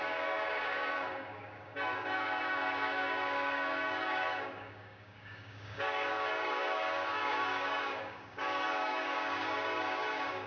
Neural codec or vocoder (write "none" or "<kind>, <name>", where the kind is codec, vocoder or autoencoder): codec, DAC